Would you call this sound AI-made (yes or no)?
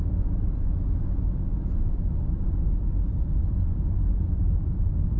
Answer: no